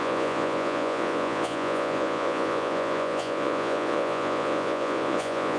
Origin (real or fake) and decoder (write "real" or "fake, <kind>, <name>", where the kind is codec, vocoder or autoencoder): fake, vocoder, Vocos